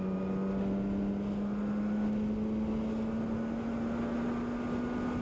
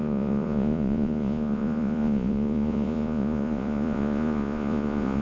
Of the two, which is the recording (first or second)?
first